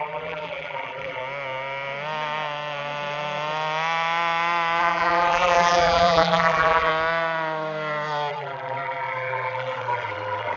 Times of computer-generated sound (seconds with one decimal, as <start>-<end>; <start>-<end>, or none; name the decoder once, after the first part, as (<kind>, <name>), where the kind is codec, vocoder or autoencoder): 0.0-1.2 (vocoder, BigVGAN v2); 4.8-6.9; 8.3-10.6